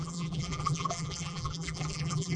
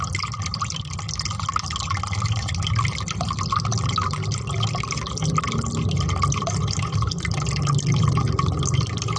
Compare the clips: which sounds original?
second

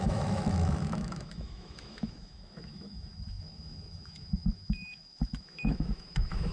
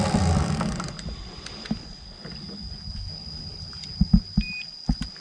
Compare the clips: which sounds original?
second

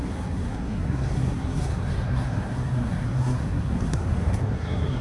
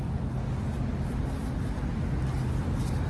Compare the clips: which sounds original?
second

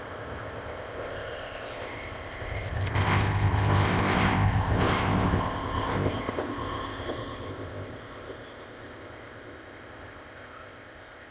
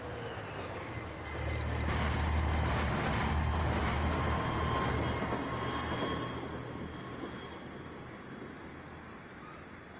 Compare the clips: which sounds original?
second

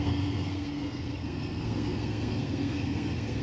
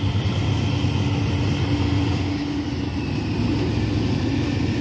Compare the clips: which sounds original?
second